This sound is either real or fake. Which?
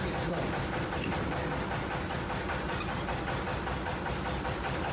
real